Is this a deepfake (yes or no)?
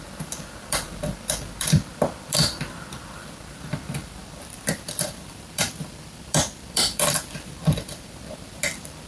yes